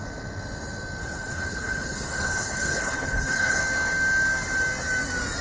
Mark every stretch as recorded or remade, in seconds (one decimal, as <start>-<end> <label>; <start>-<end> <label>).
0.0-1.0 recorded; 1.0-3.6 remade; 3.6-5.4 recorded